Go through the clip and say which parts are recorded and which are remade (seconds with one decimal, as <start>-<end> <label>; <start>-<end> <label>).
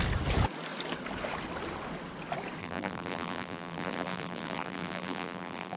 0.0-2.6 recorded; 2.6-5.8 remade